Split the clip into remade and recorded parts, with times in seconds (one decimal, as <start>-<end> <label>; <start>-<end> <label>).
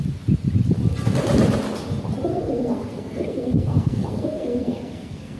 0.0-2.3 recorded; 2.3-5.4 remade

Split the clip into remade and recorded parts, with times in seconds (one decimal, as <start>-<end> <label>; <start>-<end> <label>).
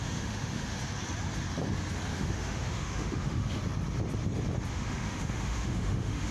0.0-0.8 remade; 0.8-2.1 recorded; 2.1-3.6 remade; 3.6-4.7 recorded; 4.7-6.3 remade